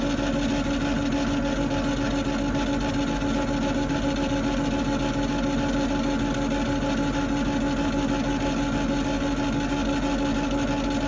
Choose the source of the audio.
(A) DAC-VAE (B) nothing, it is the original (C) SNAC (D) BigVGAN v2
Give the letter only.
B